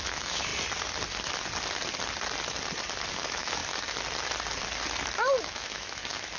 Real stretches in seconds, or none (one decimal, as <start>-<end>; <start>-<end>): 0.5-3.1; 3.6-5.4